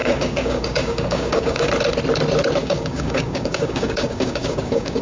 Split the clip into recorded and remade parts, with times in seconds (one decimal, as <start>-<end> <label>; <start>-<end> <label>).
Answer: 0.0-1.7 remade; 1.7-2.6 recorded; 2.6-5.0 remade